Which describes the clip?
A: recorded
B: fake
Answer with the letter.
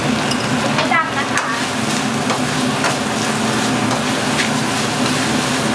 A